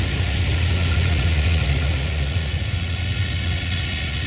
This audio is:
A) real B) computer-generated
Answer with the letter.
B